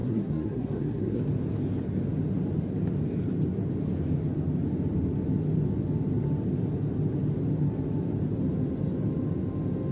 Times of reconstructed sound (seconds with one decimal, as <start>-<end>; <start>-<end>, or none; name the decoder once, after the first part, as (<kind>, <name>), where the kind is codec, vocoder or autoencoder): 0.0-1.2 (codec, SNAC)